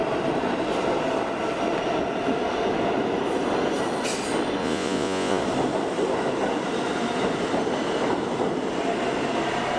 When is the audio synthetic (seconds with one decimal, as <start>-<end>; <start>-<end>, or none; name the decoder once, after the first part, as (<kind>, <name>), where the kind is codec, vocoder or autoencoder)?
4.6-5.4 (vocoder, Vocos)